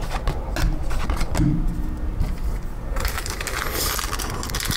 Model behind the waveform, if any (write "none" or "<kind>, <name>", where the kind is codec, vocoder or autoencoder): none